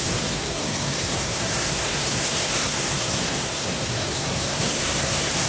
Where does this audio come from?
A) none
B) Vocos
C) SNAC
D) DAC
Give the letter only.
C